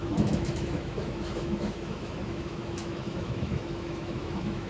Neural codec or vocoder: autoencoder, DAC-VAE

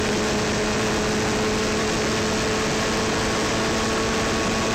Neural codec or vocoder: none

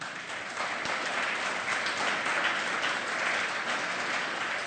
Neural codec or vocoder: none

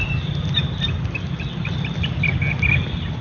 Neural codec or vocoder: none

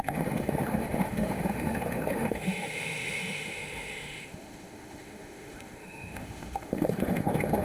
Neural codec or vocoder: autoencoder, DAC-VAE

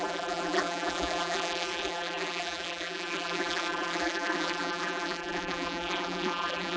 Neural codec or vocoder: vocoder, BigVGAN v2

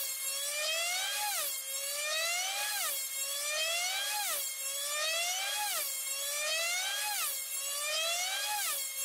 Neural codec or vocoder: none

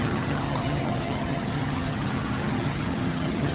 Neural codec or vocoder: vocoder, HiFi-GAN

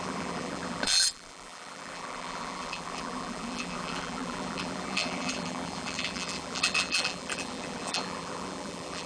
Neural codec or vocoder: vocoder, BigVGAN v2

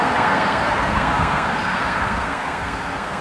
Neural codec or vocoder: codec, SNAC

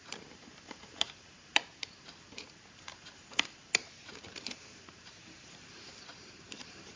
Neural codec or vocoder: vocoder, BigVGAN v2